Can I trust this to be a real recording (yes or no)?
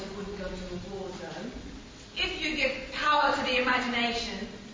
yes